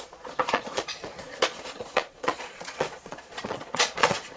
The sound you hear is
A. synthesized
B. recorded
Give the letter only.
A